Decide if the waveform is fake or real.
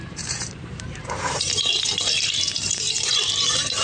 fake